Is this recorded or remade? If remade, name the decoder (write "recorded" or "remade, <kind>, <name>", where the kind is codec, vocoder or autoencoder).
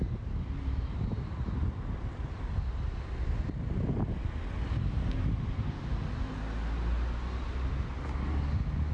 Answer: recorded